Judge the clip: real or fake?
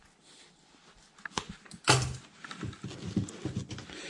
real